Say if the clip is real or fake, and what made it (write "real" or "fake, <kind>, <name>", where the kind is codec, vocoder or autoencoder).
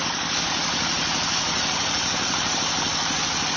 fake, codec, DAC